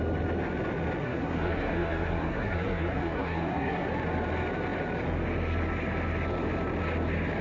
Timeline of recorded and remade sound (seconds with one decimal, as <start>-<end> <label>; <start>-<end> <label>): 0.0-1.0 recorded; 1.0-3.9 remade; 3.9-7.4 recorded